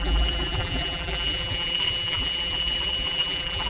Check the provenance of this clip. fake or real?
fake